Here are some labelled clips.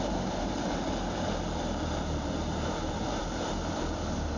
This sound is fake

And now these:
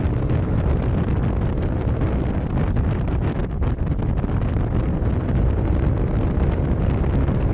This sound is real